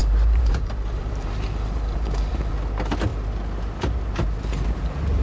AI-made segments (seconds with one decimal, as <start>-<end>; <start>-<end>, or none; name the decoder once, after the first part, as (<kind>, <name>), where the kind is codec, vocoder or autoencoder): 0.0-2.5 (vocoder, BigVGAN v2)